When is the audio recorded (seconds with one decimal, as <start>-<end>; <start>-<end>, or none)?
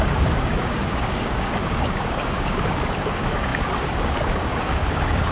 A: none